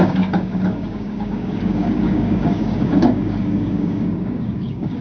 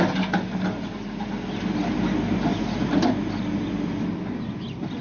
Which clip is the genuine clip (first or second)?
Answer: second